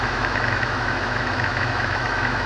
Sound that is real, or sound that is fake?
fake